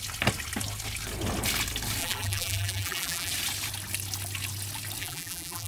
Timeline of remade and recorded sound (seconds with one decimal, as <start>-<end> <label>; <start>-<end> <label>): 0.0-2.0 recorded; 2.0-3.3 remade; 3.3-5.0 recorded; 5.0-5.7 remade